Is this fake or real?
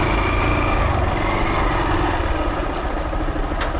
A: real